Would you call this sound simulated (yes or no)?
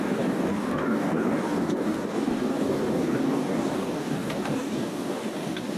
yes